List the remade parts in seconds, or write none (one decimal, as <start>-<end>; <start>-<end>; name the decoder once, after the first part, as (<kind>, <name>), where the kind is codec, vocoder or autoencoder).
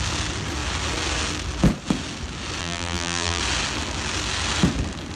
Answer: 2.6-3.4 (vocoder, BigVGAN v2)